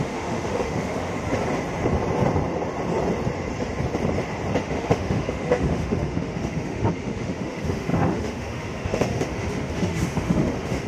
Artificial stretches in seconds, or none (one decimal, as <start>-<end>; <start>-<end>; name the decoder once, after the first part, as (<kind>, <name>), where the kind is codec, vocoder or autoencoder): 0.0-1.1 (autoencoder, DAC-VAE); 4.6-10.9